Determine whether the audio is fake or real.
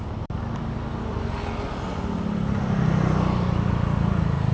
real